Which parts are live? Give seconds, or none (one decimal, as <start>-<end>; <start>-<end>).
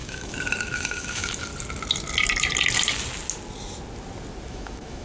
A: 1.5-4.5